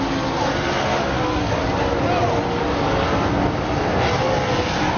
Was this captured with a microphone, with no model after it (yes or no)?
yes